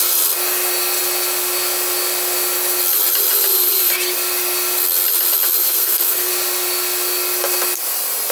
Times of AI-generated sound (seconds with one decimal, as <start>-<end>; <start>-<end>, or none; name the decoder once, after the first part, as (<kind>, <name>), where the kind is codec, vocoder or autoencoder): 5.6-6.3 (codec, SNAC)